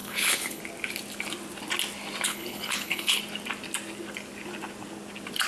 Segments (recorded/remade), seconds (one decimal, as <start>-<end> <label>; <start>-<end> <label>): 0.0-0.6 remade; 0.6-2.3 recorded; 2.3-3.2 remade; 3.2-5.5 recorded